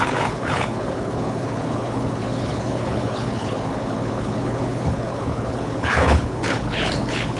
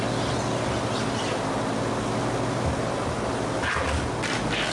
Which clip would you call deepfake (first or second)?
first